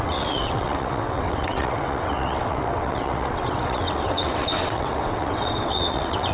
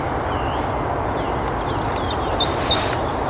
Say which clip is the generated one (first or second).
first